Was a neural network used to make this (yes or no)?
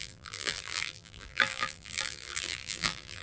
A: yes